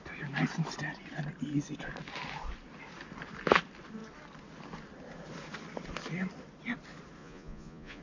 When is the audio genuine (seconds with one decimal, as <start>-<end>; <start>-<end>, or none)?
0.0-7.2

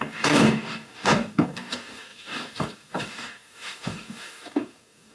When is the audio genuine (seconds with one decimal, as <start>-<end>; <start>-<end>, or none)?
none